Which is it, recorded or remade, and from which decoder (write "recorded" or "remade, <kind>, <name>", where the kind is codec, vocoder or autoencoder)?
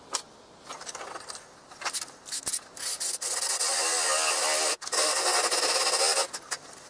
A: recorded